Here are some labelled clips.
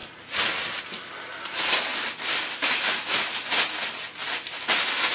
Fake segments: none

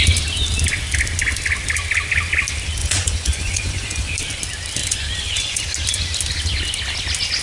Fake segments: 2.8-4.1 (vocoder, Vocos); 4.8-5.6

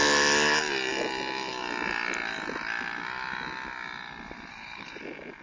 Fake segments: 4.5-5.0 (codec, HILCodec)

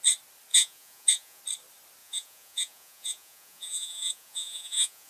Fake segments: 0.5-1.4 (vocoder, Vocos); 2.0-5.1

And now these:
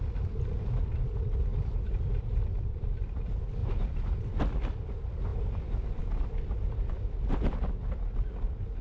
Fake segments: 3.6-4.2 (vocoder, BigVGAN v2); 5.3-6.0

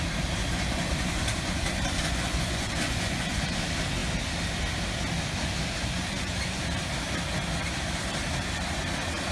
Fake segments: 0.4-3.6 (vocoder, Vocos); 5.8-6.6

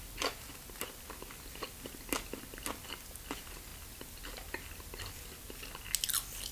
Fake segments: none